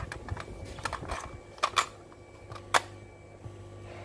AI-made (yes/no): no